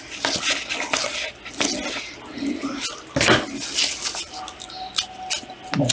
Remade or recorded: recorded